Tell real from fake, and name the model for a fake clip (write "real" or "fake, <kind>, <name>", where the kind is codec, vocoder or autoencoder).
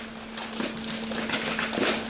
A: real